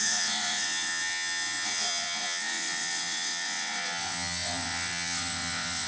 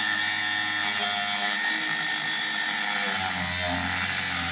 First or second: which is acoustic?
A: second